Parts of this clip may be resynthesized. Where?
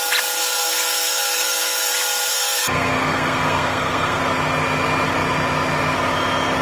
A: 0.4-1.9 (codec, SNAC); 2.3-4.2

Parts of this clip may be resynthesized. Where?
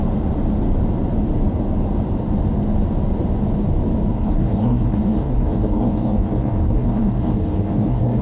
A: 4.1-8.2 (codec, SNAC)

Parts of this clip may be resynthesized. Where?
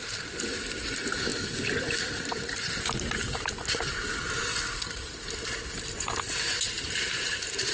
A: 0.0-1.3 (vocoder, BigVGAN v2); 2.0-4.5; 6.2-7.7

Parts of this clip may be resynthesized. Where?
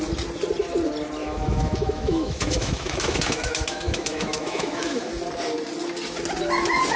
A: 1.2-5.1 (autoencoder, DAC-VAE)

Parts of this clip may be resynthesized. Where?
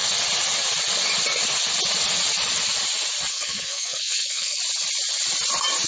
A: 3.3-4.6 (codec, SNAC)